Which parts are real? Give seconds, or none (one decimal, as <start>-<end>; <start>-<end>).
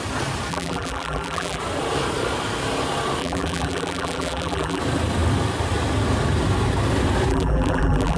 0.0-0.5; 1.6-3.2; 4.8-7.3